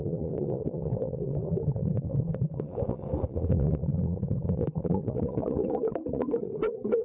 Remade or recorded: remade